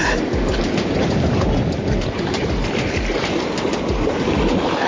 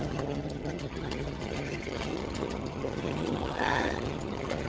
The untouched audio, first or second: first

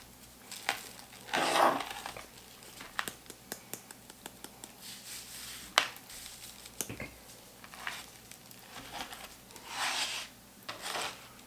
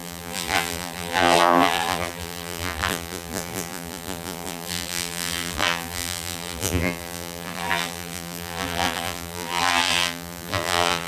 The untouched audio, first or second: first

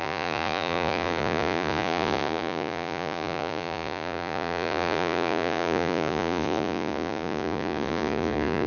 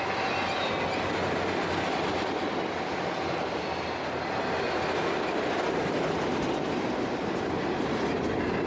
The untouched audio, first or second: second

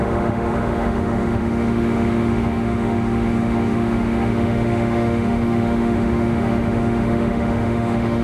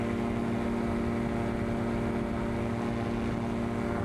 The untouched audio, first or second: second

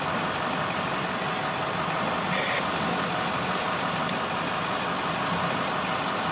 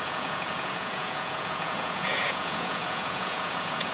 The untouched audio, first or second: first